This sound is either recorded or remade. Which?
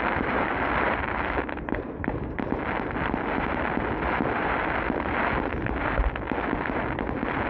recorded